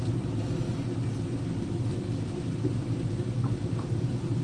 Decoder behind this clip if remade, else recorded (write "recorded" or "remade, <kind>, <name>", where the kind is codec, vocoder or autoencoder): recorded